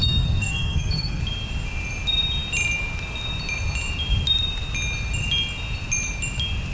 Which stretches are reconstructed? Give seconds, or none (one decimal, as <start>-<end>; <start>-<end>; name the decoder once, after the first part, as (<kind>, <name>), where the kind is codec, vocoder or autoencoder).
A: 0.0-1.2 (codec, SNAC)